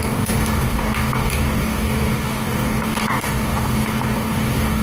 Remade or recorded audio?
remade